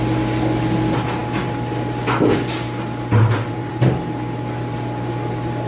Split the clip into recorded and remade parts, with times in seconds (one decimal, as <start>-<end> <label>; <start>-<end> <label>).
0.0-5.7 recorded